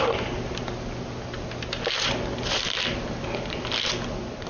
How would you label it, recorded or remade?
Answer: recorded